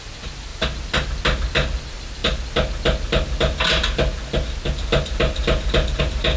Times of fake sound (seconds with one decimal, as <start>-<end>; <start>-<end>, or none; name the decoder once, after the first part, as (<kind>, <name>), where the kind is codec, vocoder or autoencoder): none